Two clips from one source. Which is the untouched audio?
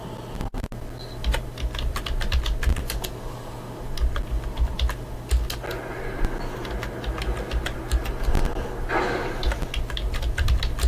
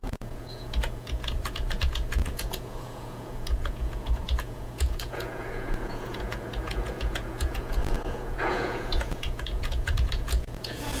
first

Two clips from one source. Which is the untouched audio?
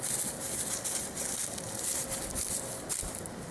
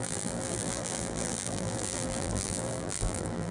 first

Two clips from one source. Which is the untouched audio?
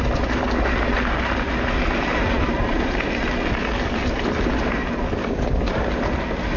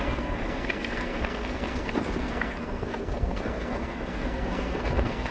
first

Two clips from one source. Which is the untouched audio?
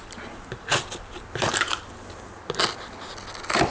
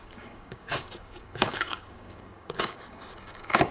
first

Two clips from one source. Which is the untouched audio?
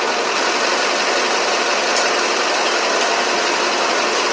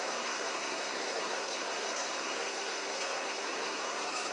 first